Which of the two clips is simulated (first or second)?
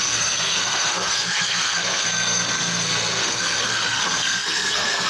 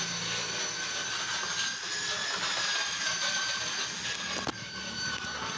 first